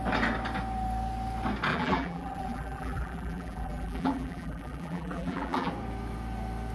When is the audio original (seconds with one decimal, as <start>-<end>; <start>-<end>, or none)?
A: 0.0-1.7; 5.7-6.7